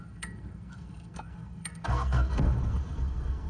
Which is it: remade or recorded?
remade